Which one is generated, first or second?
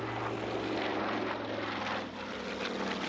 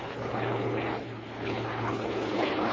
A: second